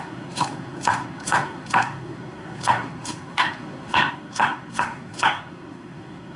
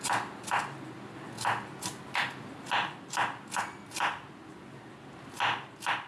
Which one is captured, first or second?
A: second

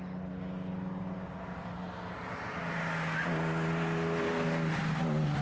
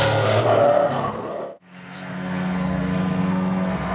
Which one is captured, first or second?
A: first